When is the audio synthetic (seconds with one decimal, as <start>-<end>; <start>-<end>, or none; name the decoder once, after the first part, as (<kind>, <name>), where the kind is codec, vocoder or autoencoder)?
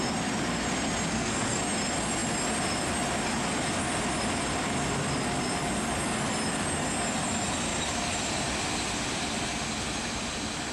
1.1-1.6 (codec, SNAC)